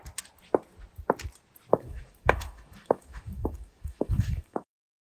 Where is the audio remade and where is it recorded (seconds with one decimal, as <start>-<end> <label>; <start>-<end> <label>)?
0.0-1.7 recorded; 1.7-5.0 remade